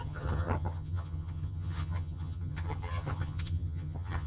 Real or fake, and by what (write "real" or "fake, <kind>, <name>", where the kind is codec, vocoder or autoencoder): fake, vocoder, HiFi-GAN